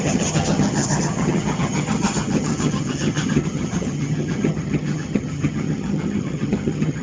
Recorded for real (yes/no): no